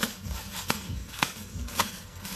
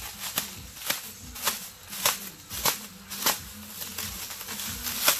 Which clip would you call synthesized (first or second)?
first